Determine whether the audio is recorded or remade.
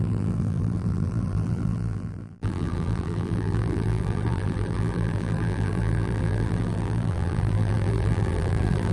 remade